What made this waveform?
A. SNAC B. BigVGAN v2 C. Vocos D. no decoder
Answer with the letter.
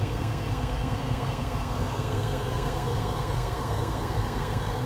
A